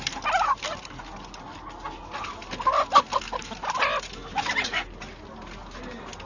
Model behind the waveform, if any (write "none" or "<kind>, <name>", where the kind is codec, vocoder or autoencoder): none